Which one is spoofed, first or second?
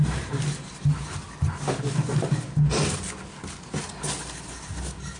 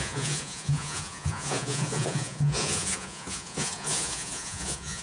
second